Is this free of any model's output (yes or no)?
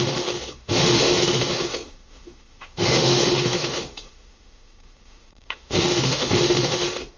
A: no